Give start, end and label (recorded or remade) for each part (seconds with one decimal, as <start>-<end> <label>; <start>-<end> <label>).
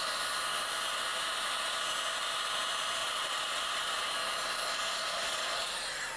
0.0-3.0 recorded; 3.0-4.1 remade; 4.1-5.0 recorded; 5.0-5.6 remade; 5.6-6.2 recorded